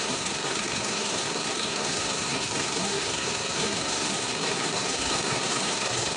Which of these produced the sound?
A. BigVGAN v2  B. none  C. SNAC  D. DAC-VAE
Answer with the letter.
C